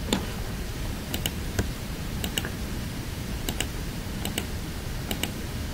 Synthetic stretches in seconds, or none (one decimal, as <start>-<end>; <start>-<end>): 0.7-4.1